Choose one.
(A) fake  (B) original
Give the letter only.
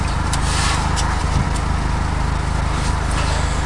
B